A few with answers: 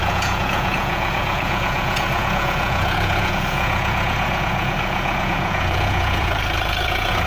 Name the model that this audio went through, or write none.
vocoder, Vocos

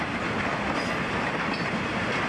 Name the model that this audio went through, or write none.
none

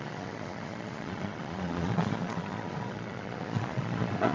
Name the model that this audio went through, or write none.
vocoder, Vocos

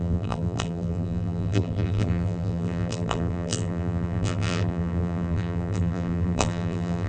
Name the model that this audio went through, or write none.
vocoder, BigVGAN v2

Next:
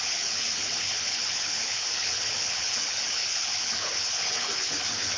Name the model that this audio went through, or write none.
codec, HILCodec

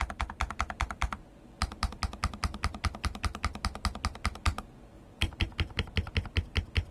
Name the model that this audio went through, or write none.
none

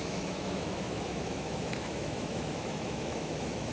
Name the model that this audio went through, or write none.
autoencoder, DAC-VAE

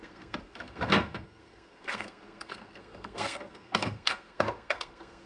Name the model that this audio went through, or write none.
codec, SNAC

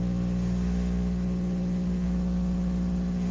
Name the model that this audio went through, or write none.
none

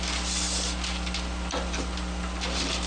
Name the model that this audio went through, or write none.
vocoder, BigVGAN v2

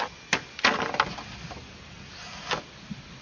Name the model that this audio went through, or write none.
none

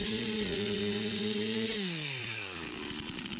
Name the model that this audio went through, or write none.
vocoder, Vocos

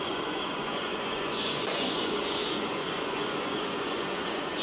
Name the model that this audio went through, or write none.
vocoder, Vocos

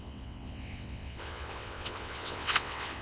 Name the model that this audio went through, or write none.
vocoder, WaveNeXt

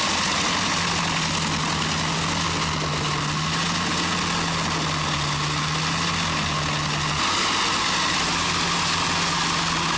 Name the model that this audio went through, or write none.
none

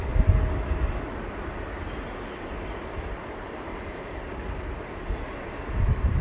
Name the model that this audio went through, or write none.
none